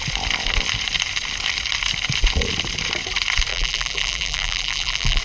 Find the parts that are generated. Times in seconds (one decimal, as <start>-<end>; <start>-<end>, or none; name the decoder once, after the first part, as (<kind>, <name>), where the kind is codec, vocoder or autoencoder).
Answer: 3.5-5.2 (vocoder, BigVGAN v2)

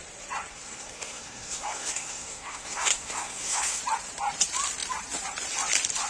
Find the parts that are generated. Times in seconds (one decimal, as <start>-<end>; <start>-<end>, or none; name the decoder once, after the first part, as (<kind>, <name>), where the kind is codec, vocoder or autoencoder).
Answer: 0.5-3.8 (codec, SNAC)

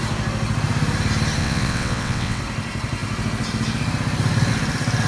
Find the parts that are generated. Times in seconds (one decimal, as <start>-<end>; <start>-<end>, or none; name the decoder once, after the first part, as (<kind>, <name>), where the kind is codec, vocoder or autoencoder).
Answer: 1.4-2.4 (vocoder, WaveNeXt)

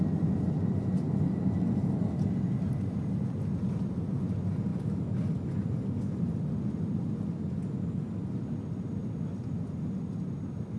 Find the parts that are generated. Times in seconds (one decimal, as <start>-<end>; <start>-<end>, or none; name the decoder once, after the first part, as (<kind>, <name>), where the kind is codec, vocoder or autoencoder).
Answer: none

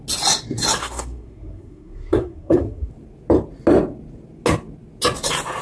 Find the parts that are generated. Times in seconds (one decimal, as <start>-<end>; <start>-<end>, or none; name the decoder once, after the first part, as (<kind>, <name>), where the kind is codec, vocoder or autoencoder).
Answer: 0.8-2.9 (codec, SNAC)

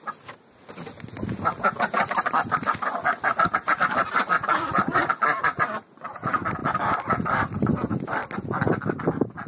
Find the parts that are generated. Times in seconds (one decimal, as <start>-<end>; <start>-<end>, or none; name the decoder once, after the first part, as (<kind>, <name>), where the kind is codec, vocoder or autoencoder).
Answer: none

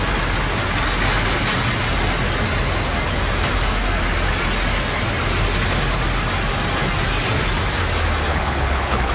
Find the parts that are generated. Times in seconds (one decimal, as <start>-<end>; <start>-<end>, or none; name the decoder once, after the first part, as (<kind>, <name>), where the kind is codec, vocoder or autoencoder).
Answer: 8.3-9.1 (codec, HILCodec)